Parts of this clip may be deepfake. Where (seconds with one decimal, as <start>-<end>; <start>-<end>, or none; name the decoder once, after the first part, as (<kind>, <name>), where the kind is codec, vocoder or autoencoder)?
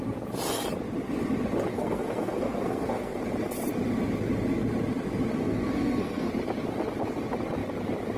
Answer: 1.7-3.2 (codec, SNAC); 5.4-6.3